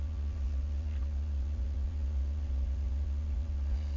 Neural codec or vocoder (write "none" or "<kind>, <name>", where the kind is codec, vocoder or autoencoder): vocoder, Vocos